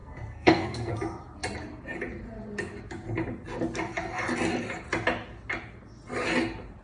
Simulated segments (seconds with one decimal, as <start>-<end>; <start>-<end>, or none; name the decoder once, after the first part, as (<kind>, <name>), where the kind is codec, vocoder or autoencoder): 0.0-0.9 (codec, SNAC)